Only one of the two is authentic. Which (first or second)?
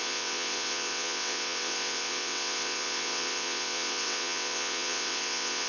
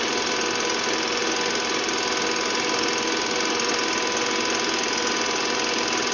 second